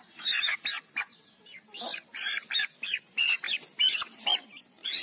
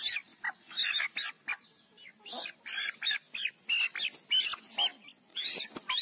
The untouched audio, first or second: second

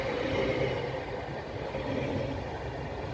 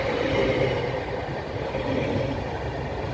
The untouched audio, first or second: first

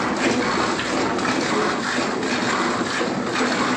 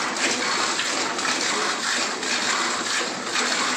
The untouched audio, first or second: first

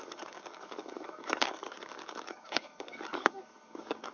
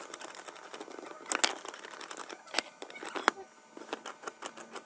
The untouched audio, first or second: second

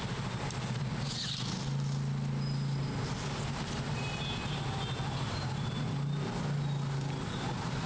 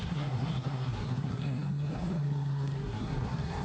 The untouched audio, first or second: first